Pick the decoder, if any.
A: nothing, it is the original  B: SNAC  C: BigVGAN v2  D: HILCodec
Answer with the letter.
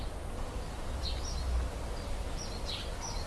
A